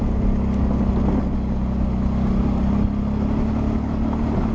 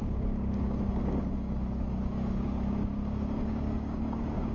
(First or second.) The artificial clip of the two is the second